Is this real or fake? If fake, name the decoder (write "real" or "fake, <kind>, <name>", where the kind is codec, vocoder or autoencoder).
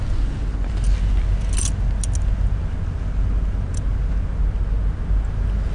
real